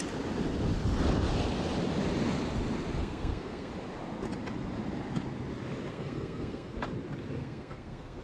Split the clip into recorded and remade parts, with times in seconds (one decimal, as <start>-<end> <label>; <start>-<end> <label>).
0.0-3.0 recorded; 3.0-3.7 remade; 3.7-5.9 recorded; 5.9-6.7 remade; 6.7-7.4 recorded; 7.4-8.2 remade